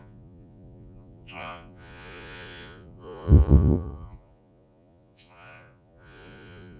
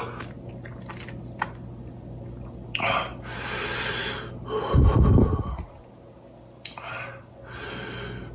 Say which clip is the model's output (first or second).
first